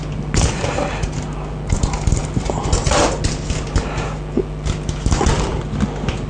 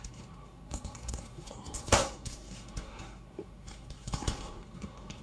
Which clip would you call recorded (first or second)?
first